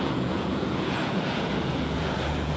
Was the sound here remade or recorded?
remade